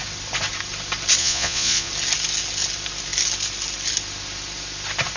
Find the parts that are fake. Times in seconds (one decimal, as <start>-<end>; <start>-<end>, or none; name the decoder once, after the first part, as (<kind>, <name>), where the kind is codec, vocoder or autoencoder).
1.2-1.9 (vocoder, Vocos)